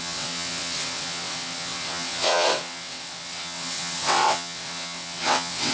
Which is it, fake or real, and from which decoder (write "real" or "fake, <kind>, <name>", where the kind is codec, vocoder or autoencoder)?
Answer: fake, vocoder, WaveNeXt